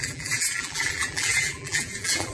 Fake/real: fake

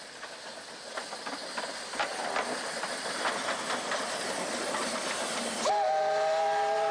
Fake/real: real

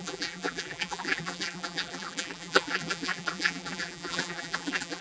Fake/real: fake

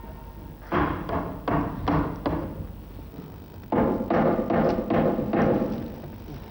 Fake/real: real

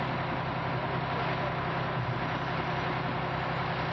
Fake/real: real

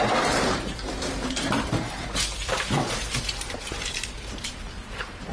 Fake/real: fake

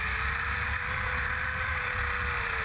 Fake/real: fake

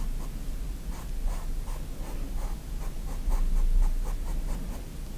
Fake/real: real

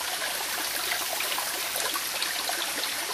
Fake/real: real